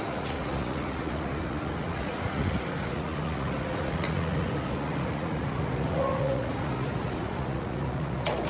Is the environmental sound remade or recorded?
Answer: remade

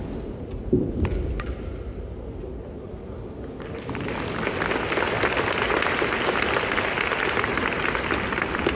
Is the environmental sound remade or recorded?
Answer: recorded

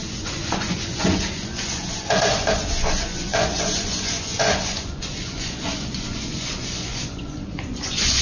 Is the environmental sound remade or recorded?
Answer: remade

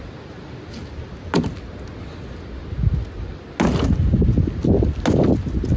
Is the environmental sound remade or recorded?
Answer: recorded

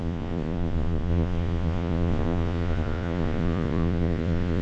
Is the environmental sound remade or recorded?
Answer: remade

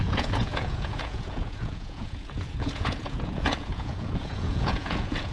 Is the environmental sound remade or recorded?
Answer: remade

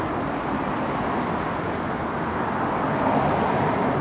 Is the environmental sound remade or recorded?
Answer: recorded